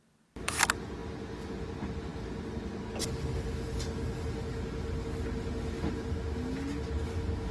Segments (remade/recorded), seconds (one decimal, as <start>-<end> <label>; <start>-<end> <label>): 0.0-7.5 recorded